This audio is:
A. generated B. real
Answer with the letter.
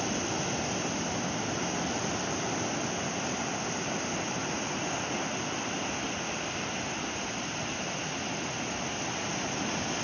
B